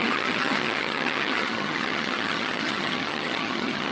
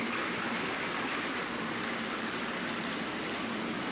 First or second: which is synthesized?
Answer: first